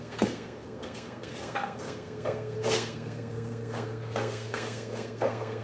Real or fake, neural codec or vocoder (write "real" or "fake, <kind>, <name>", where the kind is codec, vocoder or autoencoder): fake, codec, SNAC